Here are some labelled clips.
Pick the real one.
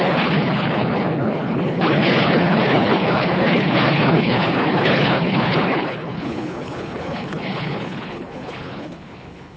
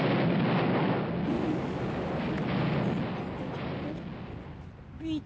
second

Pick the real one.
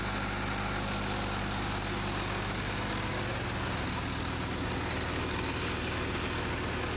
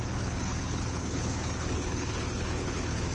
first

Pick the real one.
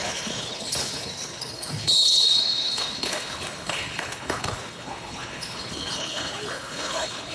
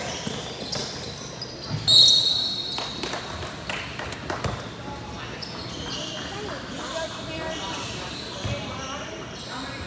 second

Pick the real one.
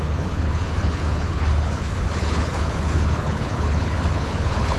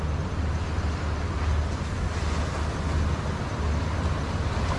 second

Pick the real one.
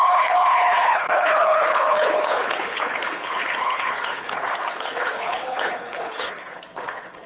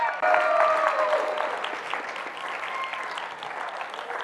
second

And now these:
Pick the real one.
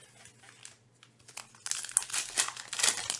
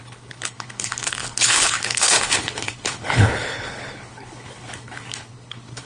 first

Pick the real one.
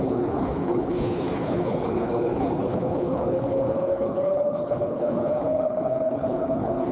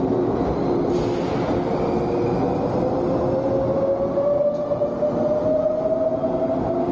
second